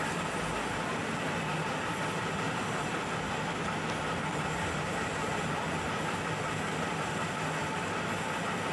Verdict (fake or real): real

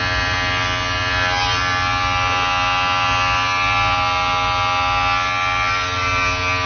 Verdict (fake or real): real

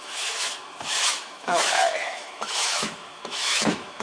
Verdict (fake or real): fake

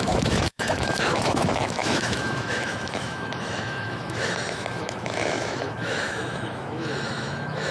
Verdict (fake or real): fake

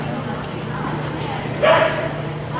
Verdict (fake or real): real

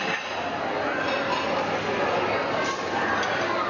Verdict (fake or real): real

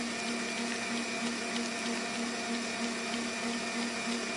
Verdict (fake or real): real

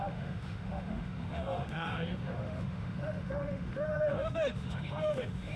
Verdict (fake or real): fake